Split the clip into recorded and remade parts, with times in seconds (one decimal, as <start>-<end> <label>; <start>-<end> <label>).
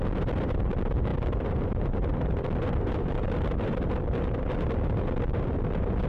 0.0-6.1 remade